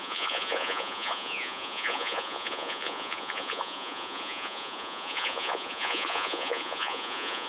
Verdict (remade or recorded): remade